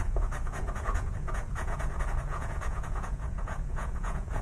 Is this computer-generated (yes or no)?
yes